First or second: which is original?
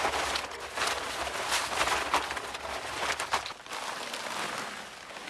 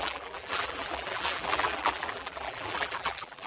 first